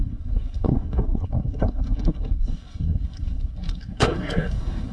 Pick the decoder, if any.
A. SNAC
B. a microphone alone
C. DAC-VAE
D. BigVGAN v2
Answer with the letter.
A